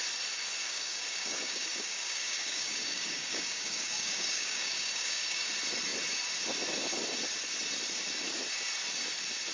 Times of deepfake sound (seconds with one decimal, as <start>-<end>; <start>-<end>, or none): 0.6-5.5

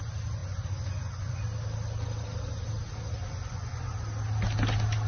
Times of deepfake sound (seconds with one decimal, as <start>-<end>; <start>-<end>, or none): 0.4-1.4; 3.2-3.9

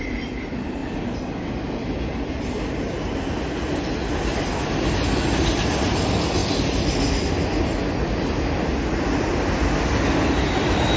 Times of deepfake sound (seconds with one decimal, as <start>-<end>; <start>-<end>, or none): none